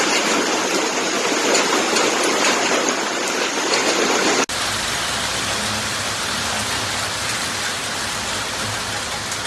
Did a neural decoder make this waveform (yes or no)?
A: no